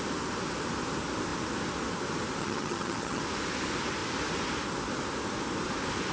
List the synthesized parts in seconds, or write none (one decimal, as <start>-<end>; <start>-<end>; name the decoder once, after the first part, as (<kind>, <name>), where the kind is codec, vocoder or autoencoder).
2.4-3.2 (vocoder, HiFi-GAN)